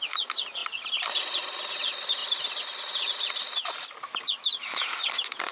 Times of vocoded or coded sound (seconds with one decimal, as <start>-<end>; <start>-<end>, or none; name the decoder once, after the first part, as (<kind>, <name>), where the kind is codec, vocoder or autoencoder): 0.6-1.8 (vocoder, BigVGAN v2); 4.4-4.9